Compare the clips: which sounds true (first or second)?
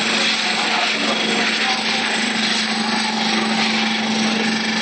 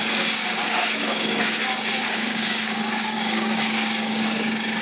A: first